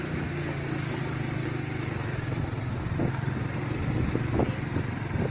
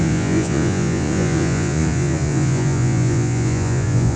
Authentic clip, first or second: first